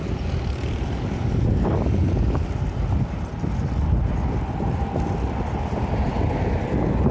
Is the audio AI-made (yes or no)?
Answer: no